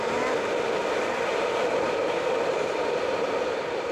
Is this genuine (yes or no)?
yes